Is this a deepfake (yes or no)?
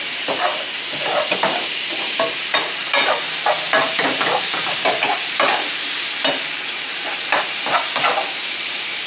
yes